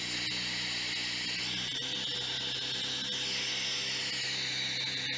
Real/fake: real